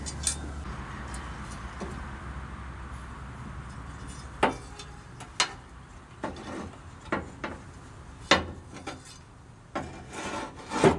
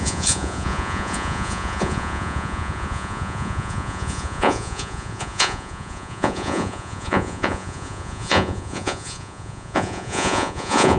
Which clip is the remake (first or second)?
second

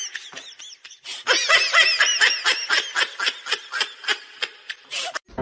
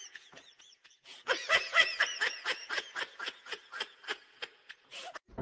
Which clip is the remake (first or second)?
second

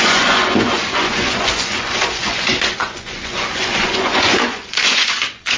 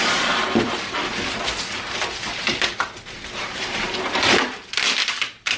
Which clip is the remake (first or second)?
first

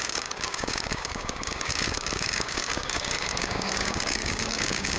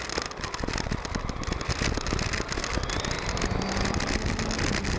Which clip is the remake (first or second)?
first